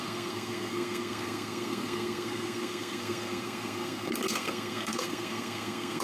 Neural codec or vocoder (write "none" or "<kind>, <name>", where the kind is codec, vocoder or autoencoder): codec, SNAC